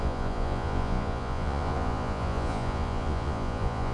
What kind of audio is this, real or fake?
fake